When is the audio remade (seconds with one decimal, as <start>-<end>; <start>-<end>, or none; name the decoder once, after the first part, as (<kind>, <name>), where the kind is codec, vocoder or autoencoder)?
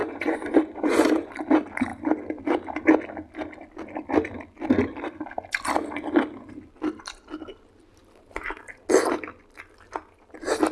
0.0-1.3 (vocoder, Vocos)